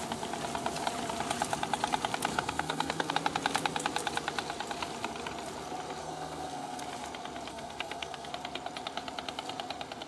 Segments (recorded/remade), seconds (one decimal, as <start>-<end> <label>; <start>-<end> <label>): 0.0-2.3 recorded; 2.3-3.1 remade; 3.1-6.0 recorded; 6.0-6.8 remade; 6.8-7.5 recorded; 7.5-8.3 remade; 8.3-10.1 recorded